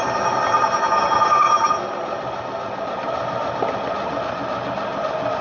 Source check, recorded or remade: recorded